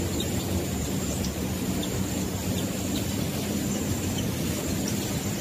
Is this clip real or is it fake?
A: real